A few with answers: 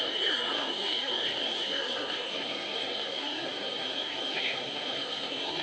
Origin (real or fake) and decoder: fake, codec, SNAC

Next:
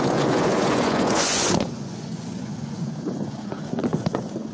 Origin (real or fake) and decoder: fake, vocoder, Vocos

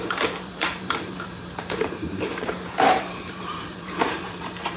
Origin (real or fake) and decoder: fake, vocoder, BigVGAN v2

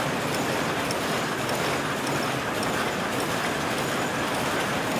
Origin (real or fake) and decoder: real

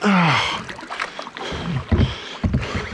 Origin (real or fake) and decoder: real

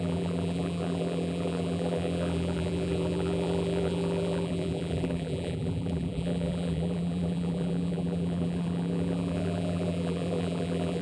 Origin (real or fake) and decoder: fake, vocoder, BigVGAN v2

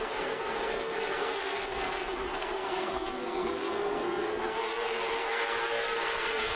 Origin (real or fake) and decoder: fake, codec, SNAC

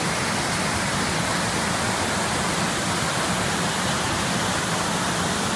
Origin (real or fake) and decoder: real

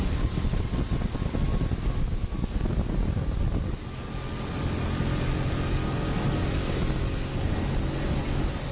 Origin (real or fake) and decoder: real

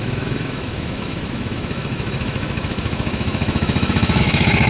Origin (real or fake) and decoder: fake, autoencoder, DAC-VAE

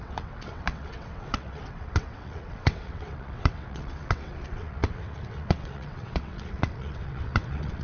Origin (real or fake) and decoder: fake, vocoder, WaveNeXt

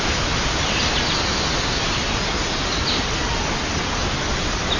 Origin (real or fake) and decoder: real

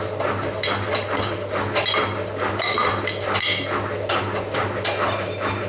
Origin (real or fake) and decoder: real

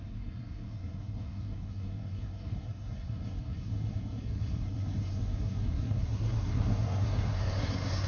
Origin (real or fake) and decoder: fake, codec, SNAC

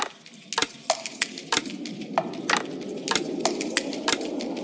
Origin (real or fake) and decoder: real